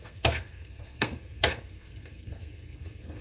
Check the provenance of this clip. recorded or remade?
remade